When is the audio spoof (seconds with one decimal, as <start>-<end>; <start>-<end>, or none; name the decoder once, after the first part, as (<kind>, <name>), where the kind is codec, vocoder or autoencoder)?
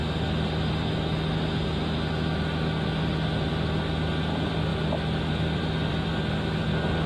3.4-4.7 (vocoder, BigVGAN v2); 5.3-6.1; 6.6-7.1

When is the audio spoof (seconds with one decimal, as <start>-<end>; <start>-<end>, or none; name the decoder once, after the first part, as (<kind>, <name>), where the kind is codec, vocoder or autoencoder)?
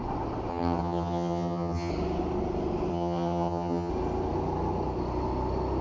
0.5-1.9 (vocoder, HiFi-GAN); 2.9-3.9